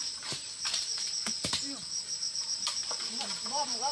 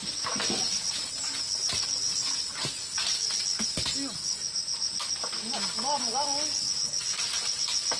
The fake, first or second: first